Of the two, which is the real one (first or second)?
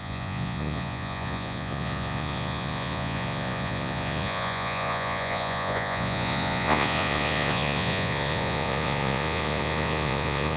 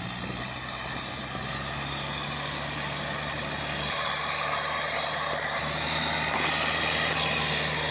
second